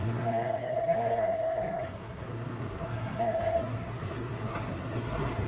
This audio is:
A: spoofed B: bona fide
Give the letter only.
A